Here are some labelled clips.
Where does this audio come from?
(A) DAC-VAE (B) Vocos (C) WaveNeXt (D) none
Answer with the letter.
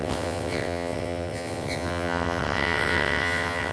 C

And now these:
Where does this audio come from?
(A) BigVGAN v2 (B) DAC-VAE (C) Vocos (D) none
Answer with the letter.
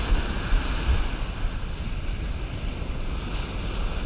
A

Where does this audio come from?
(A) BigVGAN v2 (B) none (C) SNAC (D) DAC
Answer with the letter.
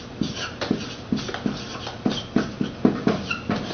B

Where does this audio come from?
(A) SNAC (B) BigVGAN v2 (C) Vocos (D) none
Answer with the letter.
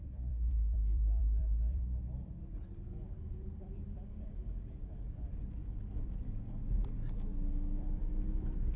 B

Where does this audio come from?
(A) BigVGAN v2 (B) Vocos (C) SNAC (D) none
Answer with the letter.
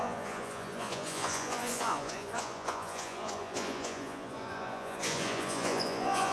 B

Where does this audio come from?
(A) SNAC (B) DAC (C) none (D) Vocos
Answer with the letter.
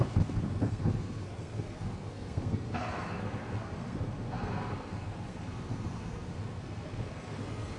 A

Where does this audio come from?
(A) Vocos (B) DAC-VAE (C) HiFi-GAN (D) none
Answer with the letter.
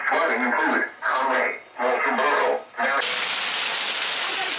D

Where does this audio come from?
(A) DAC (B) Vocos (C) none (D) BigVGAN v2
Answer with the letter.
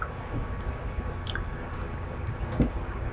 A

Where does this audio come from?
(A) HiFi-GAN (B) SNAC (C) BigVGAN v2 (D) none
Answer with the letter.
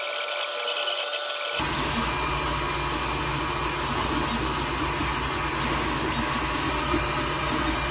D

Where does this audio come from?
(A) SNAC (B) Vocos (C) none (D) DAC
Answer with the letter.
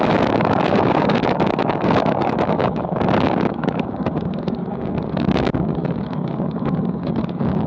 D